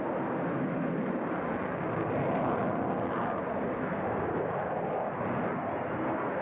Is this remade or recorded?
recorded